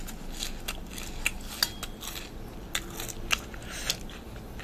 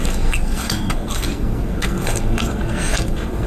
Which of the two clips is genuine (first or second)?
first